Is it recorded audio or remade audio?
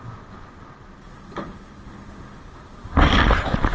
recorded